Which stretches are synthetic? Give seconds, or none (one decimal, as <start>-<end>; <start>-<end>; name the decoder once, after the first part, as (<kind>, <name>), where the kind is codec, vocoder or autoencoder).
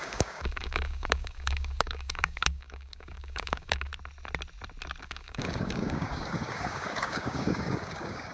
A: 0.0-3.9 (codec, DAC); 5.0-8.3